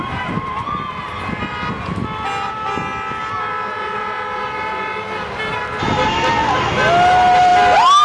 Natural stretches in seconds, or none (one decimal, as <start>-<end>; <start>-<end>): 0.0-8.0